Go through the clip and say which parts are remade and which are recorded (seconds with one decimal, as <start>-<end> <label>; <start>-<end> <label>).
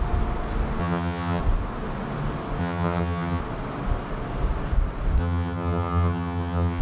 0.0-0.8 recorded; 0.8-1.4 remade; 1.4-2.6 recorded; 2.6-3.4 remade; 3.4-5.2 recorded; 5.2-6.8 remade